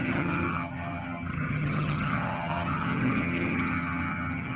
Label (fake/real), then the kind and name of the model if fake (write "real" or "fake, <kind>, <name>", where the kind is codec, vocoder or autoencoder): fake, vocoder, HiFi-GAN